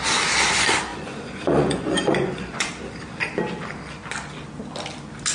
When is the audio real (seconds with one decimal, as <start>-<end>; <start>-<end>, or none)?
0.0-0.9; 2.7-5.3

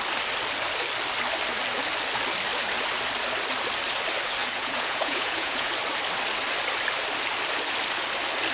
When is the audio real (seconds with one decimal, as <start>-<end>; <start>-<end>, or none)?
0.0-4.4; 5.7-8.5

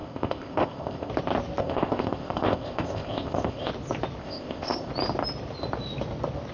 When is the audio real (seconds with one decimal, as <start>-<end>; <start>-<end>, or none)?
1.1-1.6; 3.7-4.2; 4.9-6.5

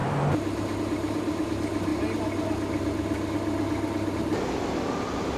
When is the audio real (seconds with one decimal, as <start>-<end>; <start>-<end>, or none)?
1.9-5.4

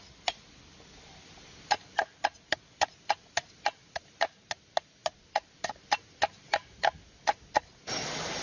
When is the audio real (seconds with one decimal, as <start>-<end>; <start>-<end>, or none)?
0.0-8.4